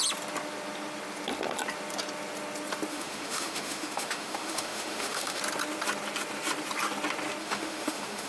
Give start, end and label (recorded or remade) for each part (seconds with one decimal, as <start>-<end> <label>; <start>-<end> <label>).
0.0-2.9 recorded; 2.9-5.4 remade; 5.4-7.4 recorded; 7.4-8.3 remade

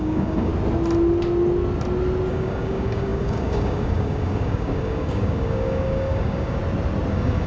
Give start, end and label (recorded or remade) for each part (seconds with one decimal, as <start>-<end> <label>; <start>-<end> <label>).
0.0-0.5 remade; 0.5-2.3 recorded; 2.3-6.6 remade; 6.6-7.1 recorded; 7.1-7.5 remade

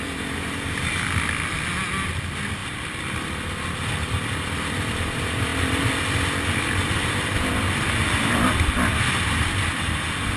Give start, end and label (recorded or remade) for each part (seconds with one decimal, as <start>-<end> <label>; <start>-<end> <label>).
0.0-10.4 recorded